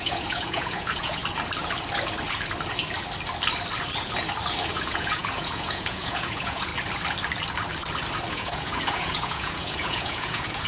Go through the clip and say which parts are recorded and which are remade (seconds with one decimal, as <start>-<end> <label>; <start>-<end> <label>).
0.0-1.2 remade; 1.2-4.7 recorded; 4.7-6.7 remade; 6.7-8.3 recorded; 8.3-10.7 remade